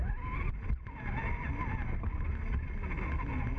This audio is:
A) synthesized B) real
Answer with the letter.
B